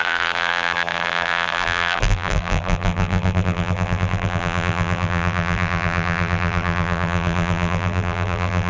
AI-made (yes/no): yes